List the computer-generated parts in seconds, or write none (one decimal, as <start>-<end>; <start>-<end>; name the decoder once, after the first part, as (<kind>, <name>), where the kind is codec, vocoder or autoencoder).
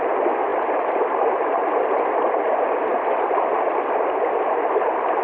none